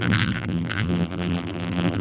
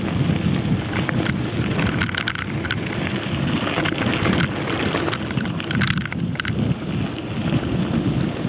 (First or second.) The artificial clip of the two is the first